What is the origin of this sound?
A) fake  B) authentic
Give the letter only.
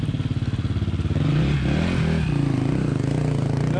B